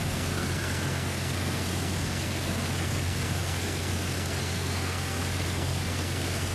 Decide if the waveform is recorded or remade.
remade